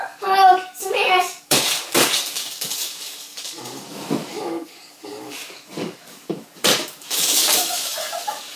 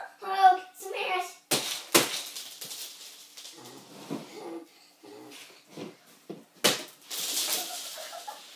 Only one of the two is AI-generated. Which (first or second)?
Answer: first